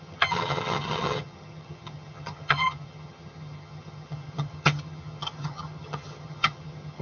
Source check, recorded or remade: remade